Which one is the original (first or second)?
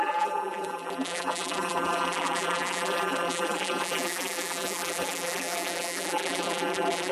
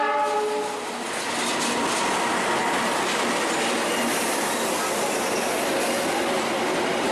second